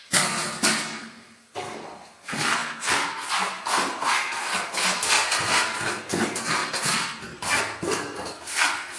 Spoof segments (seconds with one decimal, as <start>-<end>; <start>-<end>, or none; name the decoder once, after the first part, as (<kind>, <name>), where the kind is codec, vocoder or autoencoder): 0.0-9.0 (codec, SNAC)